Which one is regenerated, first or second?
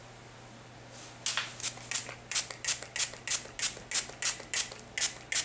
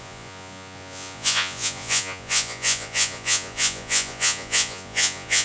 second